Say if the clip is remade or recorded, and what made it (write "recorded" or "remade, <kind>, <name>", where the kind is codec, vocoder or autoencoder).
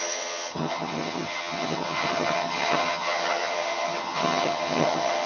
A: remade, vocoder, HiFi-GAN